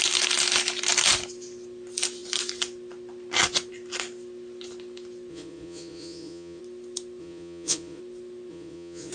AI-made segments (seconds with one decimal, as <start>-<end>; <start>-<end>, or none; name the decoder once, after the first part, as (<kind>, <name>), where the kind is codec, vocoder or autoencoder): 5.3-6.6 (vocoder, Vocos); 7.2-8.0; 8.5-9.1